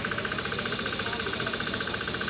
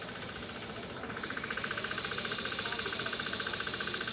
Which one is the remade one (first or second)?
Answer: second